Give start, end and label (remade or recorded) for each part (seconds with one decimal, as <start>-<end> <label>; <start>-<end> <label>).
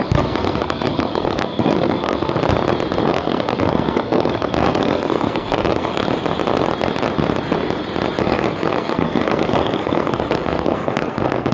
0.0-2.4 remade; 2.4-3.0 recorded; 3.0-6.0 remade; 6.0-8.2 recorded; 8.2-11.5 remade